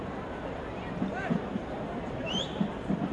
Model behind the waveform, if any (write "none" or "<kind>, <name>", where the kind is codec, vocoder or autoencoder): vocoder, BigVGAN v2